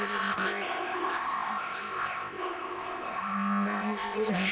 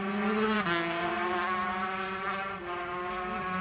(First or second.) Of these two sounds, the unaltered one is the second